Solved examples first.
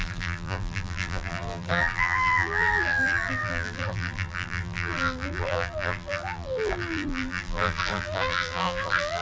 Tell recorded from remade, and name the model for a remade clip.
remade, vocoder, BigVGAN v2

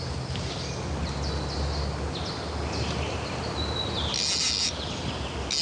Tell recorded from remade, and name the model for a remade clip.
recorded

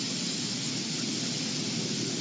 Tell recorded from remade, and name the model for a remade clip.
recorded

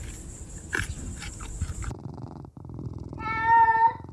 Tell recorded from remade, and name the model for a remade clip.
recorded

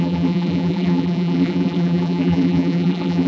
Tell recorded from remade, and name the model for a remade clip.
remade, vocoder, BigVGAN v2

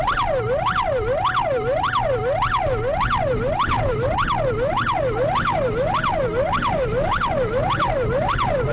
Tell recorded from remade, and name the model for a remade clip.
recorded